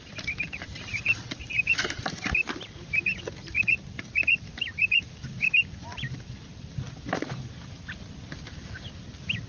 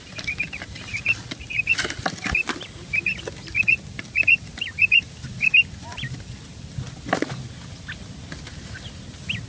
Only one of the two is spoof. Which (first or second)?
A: first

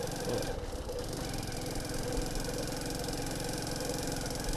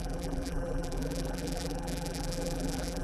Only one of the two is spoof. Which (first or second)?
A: second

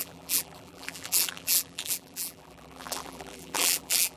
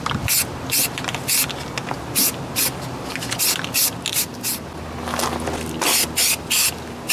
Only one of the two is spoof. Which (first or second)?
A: first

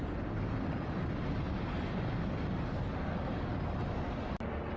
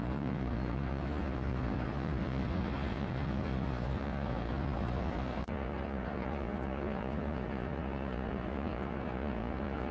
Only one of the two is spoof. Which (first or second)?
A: second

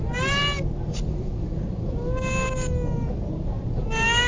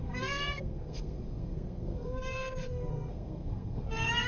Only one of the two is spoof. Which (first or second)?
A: second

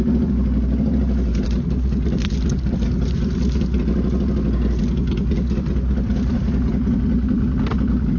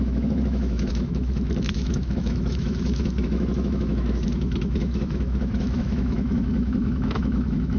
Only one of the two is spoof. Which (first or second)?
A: second